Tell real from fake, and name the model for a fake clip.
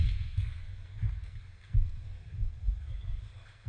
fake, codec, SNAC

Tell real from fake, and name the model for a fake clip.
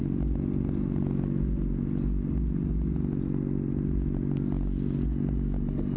real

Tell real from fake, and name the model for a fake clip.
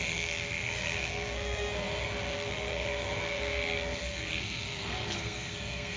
fake, codec, SNAC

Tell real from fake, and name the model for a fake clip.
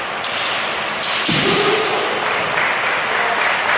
real